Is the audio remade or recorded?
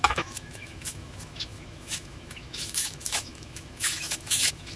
remade